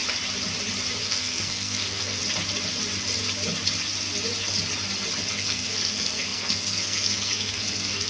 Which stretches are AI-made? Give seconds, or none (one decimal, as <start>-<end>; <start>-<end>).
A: 1.0-2.2; 5.3-8.1